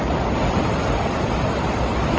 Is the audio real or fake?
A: real